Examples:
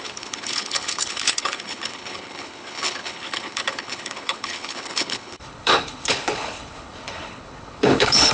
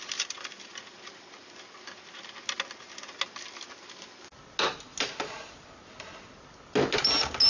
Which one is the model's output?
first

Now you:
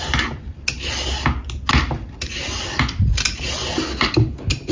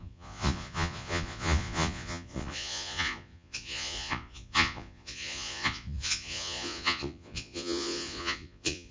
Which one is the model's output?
second